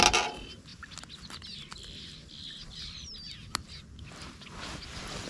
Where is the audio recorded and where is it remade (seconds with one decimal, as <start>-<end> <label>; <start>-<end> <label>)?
0.0-5.3 recorded